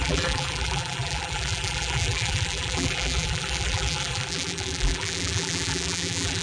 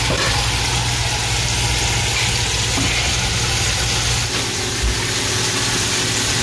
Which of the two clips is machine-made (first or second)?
first